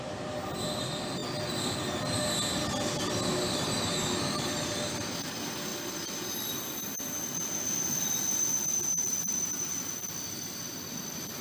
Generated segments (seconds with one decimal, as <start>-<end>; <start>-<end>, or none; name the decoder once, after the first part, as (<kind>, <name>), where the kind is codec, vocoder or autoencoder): none